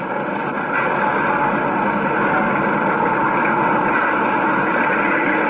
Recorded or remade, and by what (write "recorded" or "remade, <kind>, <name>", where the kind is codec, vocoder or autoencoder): recorded